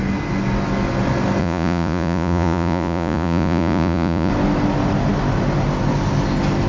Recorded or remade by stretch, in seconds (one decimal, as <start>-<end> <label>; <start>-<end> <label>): 0.0-1.4 recorded; 1.4-4.3 remade; 4.3-6.7 recorded